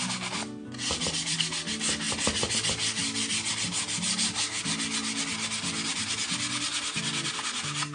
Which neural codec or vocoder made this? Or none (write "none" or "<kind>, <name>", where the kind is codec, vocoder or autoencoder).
none